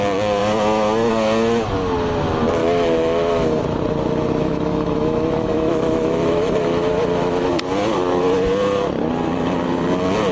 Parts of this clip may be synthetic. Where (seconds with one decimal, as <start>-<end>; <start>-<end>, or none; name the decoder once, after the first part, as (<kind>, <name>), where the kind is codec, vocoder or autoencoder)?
2.6-3.6 (autoencoder, DAC-VAE); 4.4-7.5